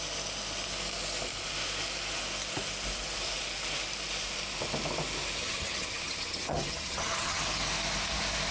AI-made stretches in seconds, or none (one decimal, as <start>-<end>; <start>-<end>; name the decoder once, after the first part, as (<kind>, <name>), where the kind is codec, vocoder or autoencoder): 5.4-7.4 (vocoder, HiFi-GAN)